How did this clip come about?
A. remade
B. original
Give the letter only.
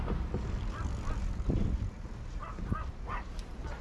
B